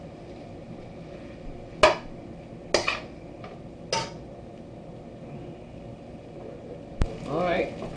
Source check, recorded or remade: recorded